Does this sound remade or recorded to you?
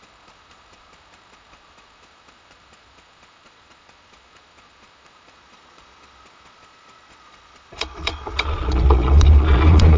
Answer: remade